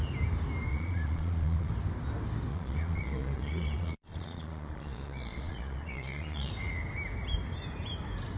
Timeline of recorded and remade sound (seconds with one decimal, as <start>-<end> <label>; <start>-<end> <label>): 0.0-0.7 recorded; 0.7-1.7 remade; 1.7-2.5 recorded; 2.5-6.5 remade; 6.5-8.4 recorded